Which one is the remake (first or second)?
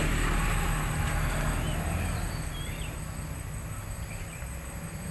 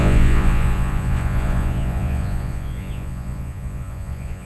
second